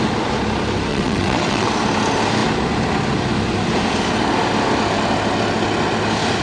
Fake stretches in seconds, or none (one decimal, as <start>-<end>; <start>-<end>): 0.9-1.7